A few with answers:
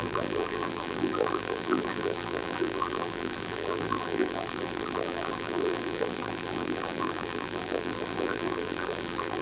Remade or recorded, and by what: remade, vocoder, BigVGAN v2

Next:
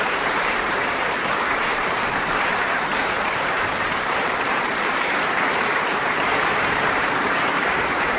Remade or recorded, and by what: remade, vocoder, BigVGAN v2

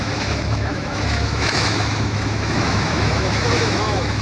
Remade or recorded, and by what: remade, autoencoder, DAC-VAE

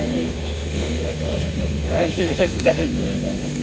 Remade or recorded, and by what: remade, autoencoder, DAC-VAE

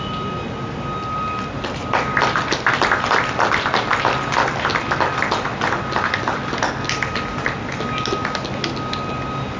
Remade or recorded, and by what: recorded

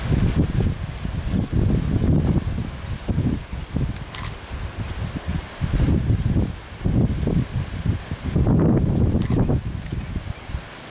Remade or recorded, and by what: recorded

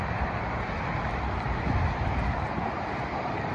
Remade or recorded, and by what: recorded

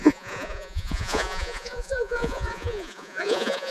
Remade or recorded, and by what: remade, vocoder, Vocos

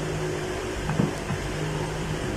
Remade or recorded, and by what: remade, vocoder, BigVGAN v2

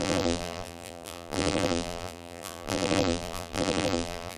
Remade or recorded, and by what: remade, vocoder, BigVGAN v2